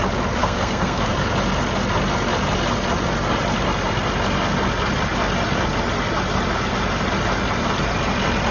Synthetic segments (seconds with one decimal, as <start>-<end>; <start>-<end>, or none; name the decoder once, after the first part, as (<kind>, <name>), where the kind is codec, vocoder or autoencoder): 0.4-1.1 (codec, SNAC)